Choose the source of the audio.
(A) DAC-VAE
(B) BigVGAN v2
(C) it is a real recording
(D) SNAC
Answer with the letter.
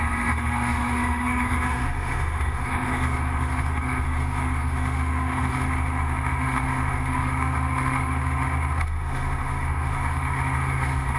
A